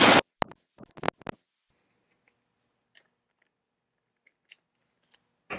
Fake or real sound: real